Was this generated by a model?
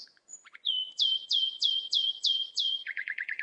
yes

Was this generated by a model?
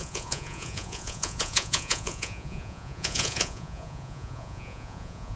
yes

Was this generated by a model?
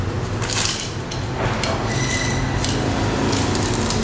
no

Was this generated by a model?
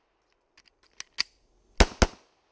no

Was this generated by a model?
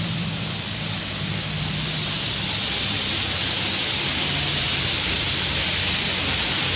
no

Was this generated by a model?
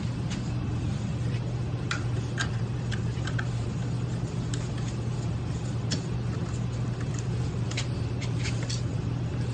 no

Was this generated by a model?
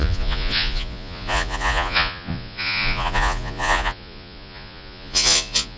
yes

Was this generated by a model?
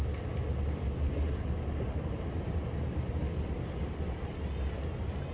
no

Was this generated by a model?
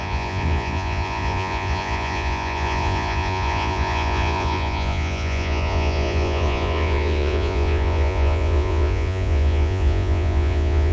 yes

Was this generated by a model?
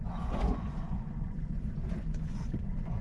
yes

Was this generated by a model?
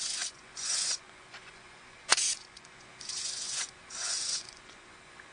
yes